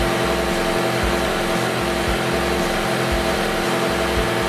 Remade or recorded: recorded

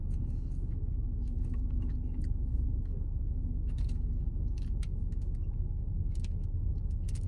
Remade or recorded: remade